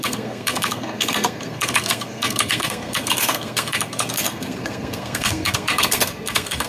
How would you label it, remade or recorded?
remade